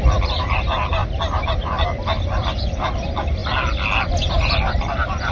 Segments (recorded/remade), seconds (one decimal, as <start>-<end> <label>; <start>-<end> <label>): 0.0-1.0 remade; 1.0-1.6 recorded; 1.6-3.4 remade; 3.4-4.3 recorded; 4.3-5.3 remade